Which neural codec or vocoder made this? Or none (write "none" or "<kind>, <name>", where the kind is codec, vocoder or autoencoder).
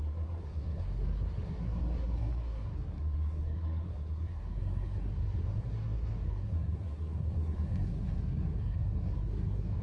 codec, SNAC